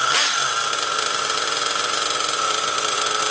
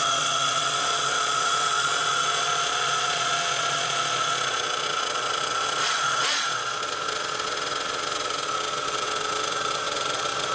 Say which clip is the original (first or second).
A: first